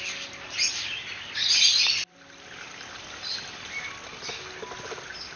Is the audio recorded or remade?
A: recorded